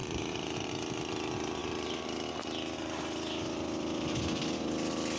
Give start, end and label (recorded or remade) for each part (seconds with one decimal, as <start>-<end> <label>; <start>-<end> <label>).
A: 0.0-0.7 remade; 0.7-1.6 recorded; 1.6-2.4 remade; 2.4-5.2 recorded